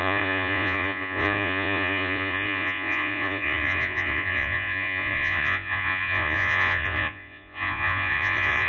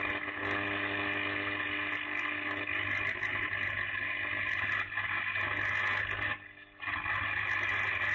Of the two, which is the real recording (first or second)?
second